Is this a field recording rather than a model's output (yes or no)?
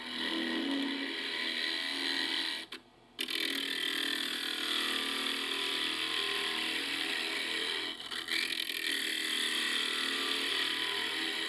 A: yes